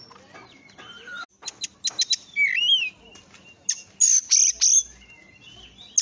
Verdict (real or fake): real